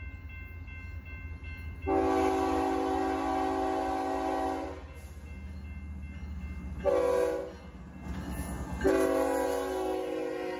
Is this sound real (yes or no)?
yes